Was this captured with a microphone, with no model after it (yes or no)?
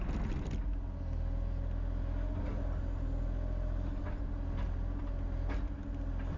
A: yes